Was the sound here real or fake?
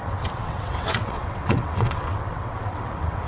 fake